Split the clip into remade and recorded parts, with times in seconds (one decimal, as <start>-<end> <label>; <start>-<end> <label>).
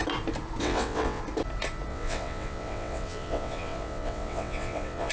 0.0-0.6 recorded; 0.6-1.2 remade; 1.2-1.9 recorded; 1.9-5.1 remade